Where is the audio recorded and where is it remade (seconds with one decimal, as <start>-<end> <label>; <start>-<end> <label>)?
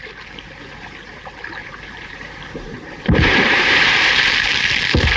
0.0-1.6 recorded; 1.6-4.3 remade; 4.3-5.2 recorded